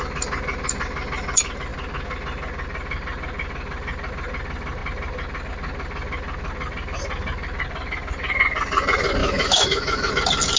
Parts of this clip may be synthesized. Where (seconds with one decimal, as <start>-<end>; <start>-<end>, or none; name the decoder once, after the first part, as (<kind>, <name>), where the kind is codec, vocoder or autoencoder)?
9.2-10.1 (autoencoder, DAC-VAE)